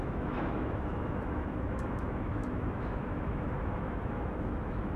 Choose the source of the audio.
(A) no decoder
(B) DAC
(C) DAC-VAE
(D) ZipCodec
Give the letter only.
C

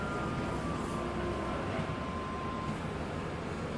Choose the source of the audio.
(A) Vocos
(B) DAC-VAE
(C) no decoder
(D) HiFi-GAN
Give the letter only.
C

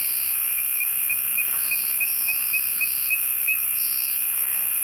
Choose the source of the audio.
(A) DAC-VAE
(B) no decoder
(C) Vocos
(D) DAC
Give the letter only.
A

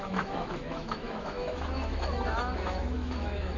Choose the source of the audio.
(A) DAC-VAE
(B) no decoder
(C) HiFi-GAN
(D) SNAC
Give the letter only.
A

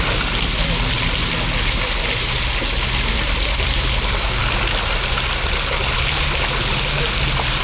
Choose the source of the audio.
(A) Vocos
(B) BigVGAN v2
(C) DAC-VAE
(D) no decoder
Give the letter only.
D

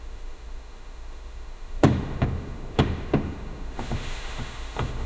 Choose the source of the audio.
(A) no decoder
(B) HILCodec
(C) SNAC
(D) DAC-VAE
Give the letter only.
D